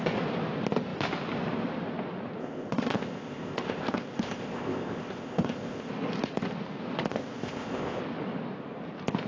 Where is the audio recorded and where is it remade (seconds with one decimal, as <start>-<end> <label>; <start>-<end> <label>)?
0.0-2.4 recorded; 2.4-5.9 remade; 5.9-7.1 recorded; 7.1-8.0 remade; 8.0-9.3 recorded